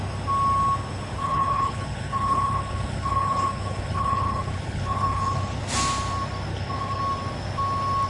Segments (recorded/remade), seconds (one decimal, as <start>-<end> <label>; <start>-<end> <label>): 0.0-1.2 recorded; 1.2-5.6 remade; 5.6-6.5 recorded; 6.5-7.0 remade; 7.0-8.1 recorded